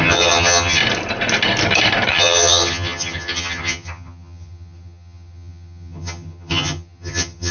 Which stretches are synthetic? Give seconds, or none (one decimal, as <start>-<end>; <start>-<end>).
0.0-0.8; 2.1-7.5